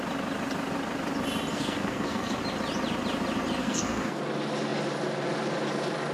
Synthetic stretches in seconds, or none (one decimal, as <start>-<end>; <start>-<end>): 1.5-2.4; 3.6-4.2